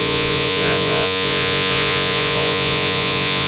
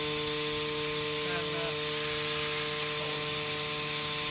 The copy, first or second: first